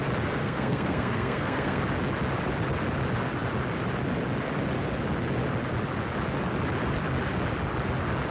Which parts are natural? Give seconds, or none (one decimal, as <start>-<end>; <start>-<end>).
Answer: 0.0-0.4; 1.8-8.3

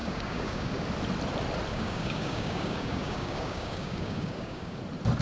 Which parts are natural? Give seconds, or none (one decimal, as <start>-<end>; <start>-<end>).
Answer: 0.7-1.7; 4.8-5.2

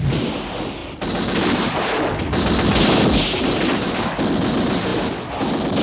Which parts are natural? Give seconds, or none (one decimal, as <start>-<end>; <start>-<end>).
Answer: 0.0-5.8

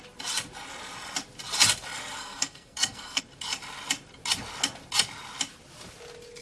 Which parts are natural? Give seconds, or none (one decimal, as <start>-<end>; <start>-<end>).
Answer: 0.0-2.2; 3.2-6.4

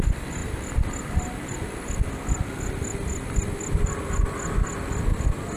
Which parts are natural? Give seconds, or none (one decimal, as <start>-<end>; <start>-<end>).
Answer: 0.0-5.6

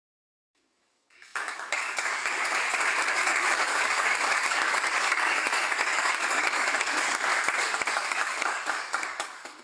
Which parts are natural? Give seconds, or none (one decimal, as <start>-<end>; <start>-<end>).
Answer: 7.3-7.9